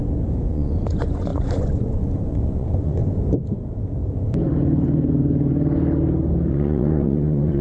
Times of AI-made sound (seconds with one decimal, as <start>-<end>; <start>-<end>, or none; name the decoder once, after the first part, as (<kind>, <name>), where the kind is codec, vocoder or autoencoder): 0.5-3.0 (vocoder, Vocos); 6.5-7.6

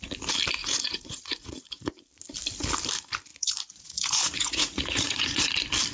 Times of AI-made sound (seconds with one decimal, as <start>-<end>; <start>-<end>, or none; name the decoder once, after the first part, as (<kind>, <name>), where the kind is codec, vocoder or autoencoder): 0.6-1.9 (vocoder, Vocos); 3.3-5.5

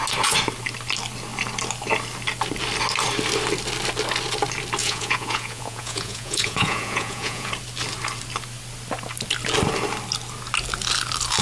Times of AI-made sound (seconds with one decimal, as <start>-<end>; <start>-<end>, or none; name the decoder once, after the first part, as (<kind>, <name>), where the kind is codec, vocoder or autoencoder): 4.8-7.5 (vocoder, Vocos)